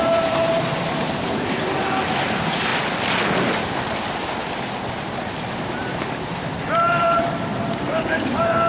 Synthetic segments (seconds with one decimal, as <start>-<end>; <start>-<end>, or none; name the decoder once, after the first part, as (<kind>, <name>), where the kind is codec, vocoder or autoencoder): 0.0-2.7 (vocoder, BigVGAN v2); 5.0-8.7